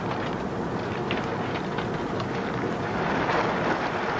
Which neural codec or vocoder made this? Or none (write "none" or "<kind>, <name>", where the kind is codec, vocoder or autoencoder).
none